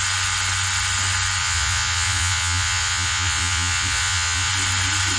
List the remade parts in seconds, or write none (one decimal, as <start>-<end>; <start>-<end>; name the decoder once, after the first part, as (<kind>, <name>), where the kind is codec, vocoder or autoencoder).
1.4-4.5 (vocoder, Vocos)